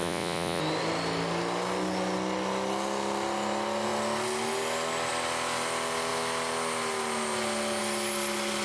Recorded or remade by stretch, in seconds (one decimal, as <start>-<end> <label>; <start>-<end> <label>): 0.0-0.6 remade; 0.6-8.6 recorded